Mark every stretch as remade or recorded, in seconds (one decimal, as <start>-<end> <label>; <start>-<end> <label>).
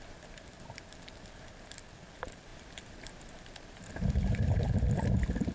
0.0-5.5 recorded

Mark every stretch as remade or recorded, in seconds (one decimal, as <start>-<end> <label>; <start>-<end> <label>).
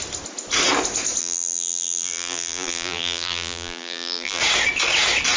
0.0-1.2 recorded; 1.2-4.4 remade; 4.4-5.4 recorded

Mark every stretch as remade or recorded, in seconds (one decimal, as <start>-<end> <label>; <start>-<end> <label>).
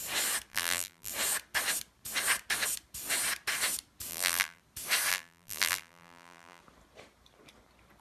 0.0-0.5 recorded; 0.5-1.1 remade; 1.1-4.1 recorded; 4.1-4.6 remade; 4.6-5.1 recorded; 5.1-6.6 remade; 6.6-8.0 recorded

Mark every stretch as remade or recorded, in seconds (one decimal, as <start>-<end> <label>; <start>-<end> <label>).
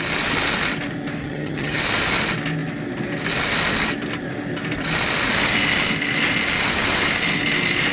0.0-1.2 recorded; 1.2-1.8 remade; 1.8-7.9 recorded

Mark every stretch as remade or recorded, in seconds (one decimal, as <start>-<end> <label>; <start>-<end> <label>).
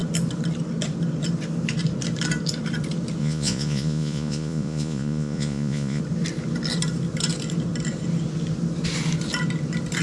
0.0-3.2 recorded; 3.2-6.0 remade; 6.0-10.0 recorded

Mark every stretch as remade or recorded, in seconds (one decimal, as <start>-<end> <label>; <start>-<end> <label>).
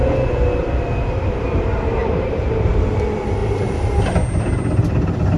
0.0-2.0 recorded; 2.0-2.7 remade; 2.7-3.4 recorded; 3.4-4.0 remade; 4.0-5.4 recorded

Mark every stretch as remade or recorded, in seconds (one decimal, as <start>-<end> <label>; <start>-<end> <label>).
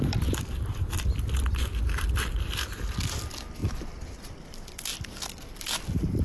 0.0-6.2 remade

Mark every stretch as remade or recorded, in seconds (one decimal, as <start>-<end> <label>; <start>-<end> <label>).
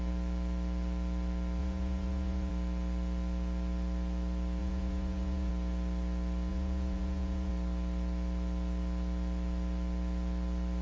0.0-1.6 recorded; 1.6-2.5 remade; 2.5-4.6 recorded; 4.6-5.5 remade; 5.5-6.5 recorded; 6.5-7.5 remade; 7.5-10.8 recorded